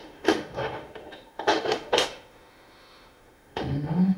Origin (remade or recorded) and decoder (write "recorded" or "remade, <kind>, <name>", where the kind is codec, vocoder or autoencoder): remade, autoencoder, DAC-VAE